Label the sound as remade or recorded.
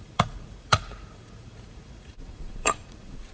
remade